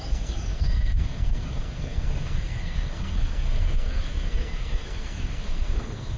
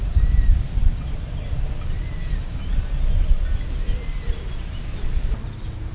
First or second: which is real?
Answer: second